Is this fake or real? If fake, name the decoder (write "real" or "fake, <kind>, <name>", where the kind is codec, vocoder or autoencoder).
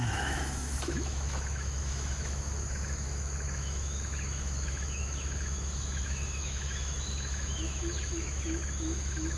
fake, autoencoder, DAC-VAE